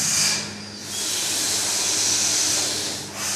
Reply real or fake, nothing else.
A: real